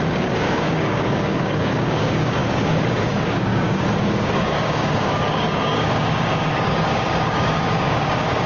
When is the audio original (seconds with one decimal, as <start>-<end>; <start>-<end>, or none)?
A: none